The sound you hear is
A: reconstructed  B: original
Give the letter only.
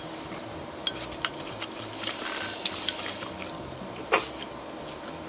B